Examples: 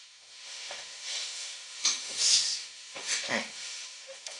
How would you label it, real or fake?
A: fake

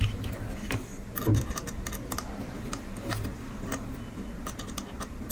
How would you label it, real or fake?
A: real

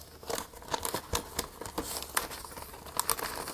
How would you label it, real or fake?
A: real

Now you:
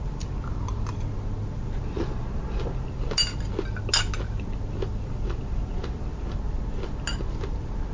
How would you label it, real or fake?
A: real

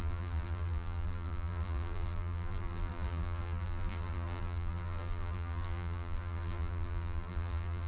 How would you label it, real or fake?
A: fake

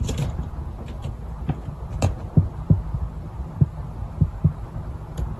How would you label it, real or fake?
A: fake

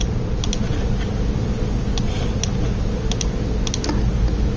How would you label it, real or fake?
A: real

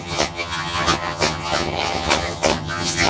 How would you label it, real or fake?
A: fake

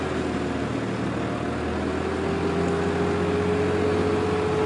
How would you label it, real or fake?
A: real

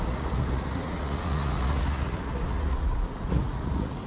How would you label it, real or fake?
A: fake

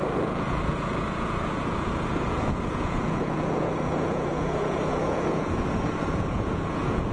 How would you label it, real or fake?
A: fake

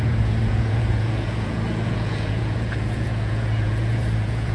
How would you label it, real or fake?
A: fake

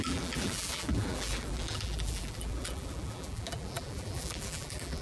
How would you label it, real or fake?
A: fake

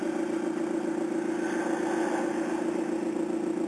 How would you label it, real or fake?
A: real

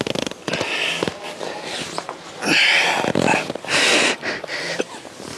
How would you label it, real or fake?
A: real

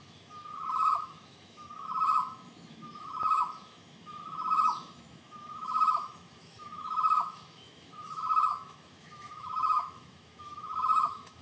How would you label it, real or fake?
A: fake